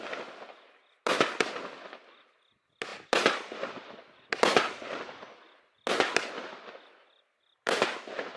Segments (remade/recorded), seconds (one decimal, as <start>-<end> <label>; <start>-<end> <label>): 0.0-8.4 recorded